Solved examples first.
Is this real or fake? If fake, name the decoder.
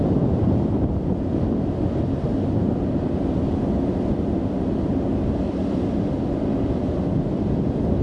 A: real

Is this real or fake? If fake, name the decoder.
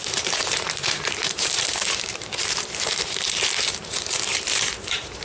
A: fake, vocoder, BigVGAN v2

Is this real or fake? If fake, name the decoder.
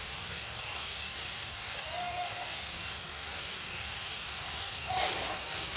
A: fake, codec, DAC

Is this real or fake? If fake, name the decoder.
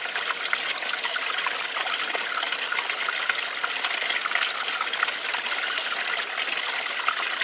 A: real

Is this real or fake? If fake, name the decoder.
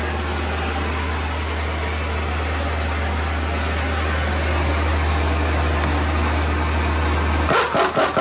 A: real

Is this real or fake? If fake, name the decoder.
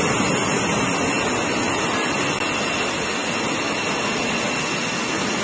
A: real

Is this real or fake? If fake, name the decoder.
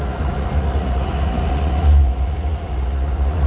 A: fake, vocoder, Vocos